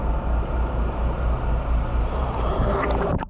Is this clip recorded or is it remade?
remade